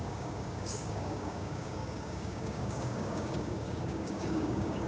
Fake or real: fake